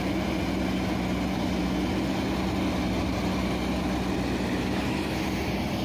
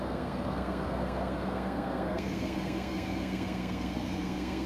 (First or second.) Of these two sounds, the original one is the first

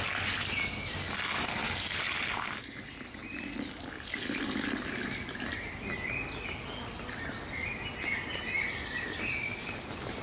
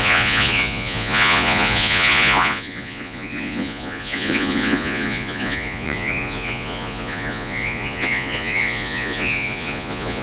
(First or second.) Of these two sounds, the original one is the first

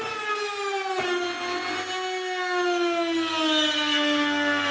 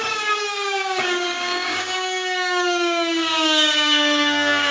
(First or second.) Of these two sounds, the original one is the first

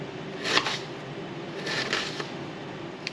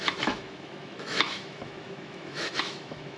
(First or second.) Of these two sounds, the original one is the first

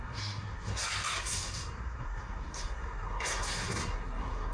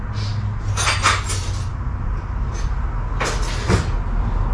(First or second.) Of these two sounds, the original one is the second